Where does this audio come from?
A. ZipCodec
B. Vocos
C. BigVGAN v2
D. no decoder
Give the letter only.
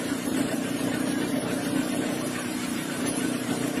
C